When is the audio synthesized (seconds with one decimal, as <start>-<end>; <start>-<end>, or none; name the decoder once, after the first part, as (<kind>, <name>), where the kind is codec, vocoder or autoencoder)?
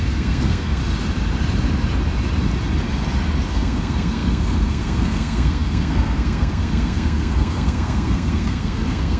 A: 0.0-0.8 (codec, SNAC); 3.5-9.2